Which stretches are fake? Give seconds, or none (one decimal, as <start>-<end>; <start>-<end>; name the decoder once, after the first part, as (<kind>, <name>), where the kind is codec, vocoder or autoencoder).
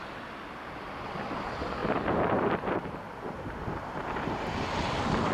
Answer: 1.8-5.3 (vocoder, BigVGAN v2)